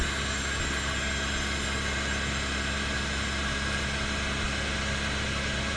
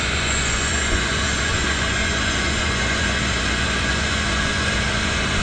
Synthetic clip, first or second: second